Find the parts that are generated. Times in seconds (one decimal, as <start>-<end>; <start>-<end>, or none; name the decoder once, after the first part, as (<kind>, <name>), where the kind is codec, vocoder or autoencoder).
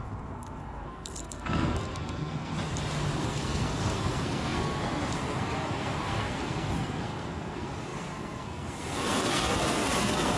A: 0.0-2.5 (codec, SNAC); 3.2-10.4